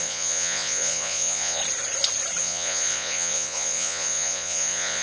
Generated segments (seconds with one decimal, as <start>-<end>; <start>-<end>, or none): 0.0-1.6; 2.4-5.0